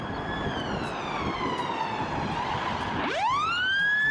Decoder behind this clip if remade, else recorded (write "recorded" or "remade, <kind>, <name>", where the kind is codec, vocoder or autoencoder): recorded